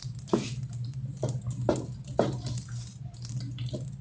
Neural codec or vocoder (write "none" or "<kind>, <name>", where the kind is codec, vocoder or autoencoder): none